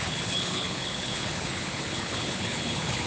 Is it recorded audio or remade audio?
remade